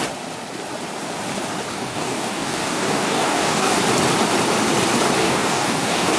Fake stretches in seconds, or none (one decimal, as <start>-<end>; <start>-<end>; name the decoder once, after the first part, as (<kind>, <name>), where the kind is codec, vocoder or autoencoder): 1.7-3.8 (codec, DAC); 5.2-6.2